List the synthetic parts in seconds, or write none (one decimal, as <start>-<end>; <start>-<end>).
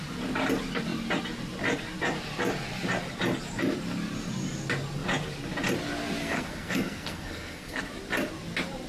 6.2-7.8